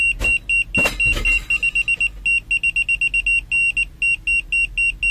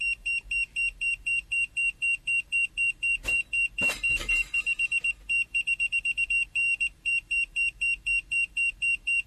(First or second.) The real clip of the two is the first